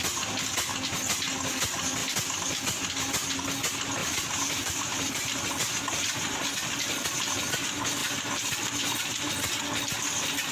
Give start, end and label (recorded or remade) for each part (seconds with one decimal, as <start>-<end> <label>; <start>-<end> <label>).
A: 0.0-4.0 recorded; 4.0-5.4 remade; 5.4-8.0 recorded; 8.0-9.3 remade; 9.3-10.5 recorded